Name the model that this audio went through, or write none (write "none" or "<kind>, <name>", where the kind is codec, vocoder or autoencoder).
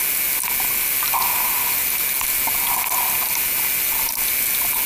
none